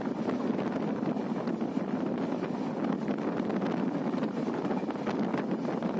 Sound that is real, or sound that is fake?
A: real